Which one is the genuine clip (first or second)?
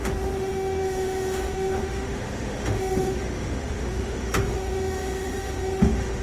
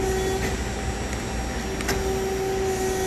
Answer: second